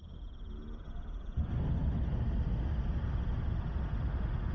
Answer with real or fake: real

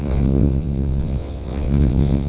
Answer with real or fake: fake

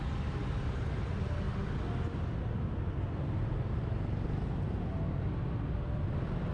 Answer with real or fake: real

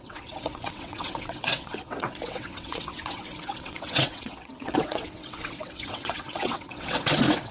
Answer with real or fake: fake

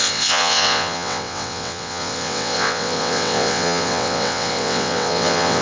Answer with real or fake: fake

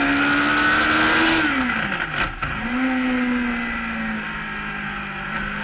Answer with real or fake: real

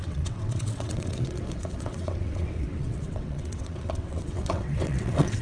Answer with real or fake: fake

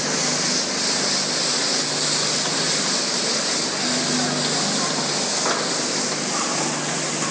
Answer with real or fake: real